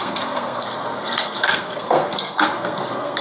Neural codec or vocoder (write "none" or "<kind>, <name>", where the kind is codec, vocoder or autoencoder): codec, SNAC